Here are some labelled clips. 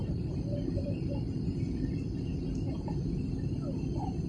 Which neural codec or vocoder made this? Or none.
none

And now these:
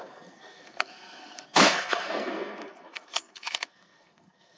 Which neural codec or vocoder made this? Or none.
codec, SNAC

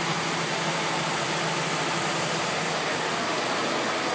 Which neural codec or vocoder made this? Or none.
none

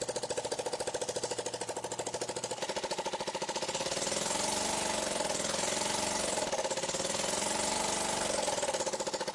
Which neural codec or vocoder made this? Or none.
none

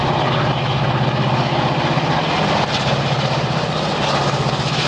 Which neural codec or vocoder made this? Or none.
none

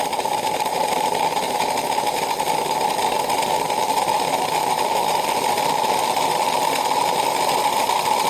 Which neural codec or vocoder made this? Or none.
none